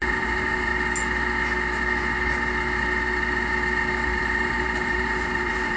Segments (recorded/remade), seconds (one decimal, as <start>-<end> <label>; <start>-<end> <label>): 0.0-0.7 remade; 0.7-4.2 recorded; 4.2-5.8 remade

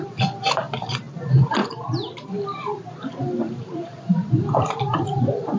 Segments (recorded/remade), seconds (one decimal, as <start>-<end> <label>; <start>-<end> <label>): 0.0-5.6 remade